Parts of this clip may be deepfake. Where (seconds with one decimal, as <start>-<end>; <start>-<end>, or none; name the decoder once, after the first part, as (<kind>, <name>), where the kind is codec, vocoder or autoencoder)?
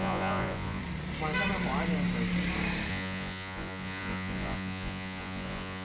0.0-0.8 (vocoder, Vocos); 2.9-5.8